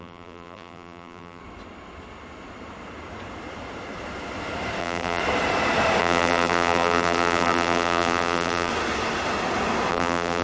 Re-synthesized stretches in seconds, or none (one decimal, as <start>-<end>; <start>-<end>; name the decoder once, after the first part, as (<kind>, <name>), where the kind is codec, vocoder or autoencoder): 0.0-1.4 (vocoder, BigVGAN v2); 4.8-5.2; 6.0-8.7; 9.9-10.4